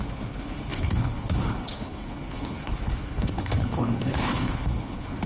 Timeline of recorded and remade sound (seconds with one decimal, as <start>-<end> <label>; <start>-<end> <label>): 0.0-5.3 remade